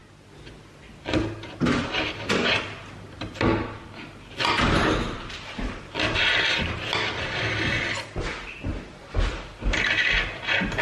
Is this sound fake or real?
real